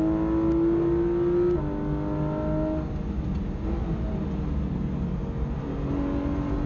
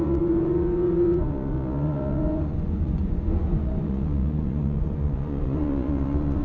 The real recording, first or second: first